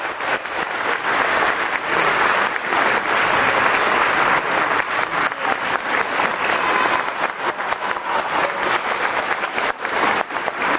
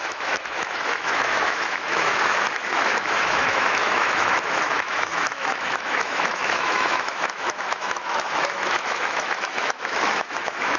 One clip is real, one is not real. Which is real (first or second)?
first